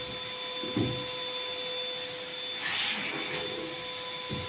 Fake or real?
real